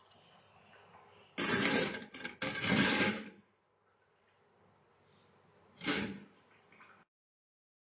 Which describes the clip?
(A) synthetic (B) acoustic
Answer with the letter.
A